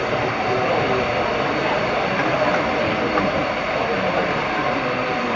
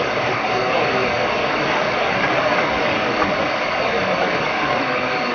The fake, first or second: second